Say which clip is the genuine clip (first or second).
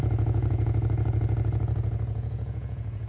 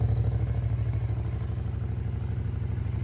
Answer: second